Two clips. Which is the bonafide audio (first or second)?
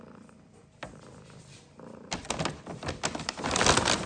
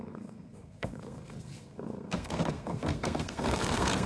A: first